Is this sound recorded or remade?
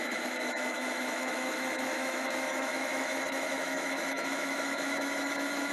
remade